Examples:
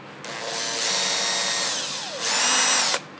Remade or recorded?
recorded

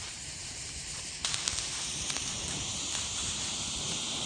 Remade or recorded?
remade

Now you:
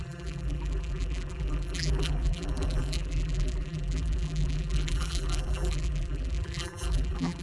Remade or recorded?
remade